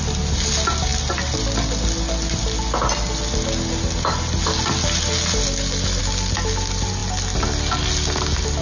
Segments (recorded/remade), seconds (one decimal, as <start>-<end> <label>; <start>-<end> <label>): 0.0-8.6 recorded